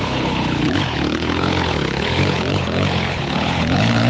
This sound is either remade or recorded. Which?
remade